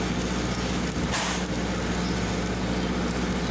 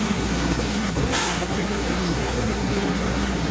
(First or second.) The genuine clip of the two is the first